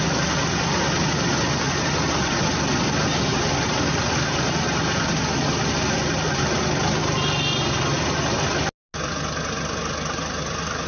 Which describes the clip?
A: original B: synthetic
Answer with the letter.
A